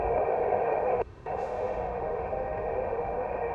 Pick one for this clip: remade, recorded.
remade